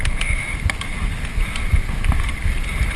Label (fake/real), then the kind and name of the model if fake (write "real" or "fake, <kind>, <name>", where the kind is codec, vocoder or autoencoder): real